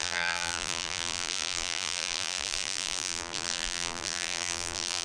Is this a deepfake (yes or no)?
yes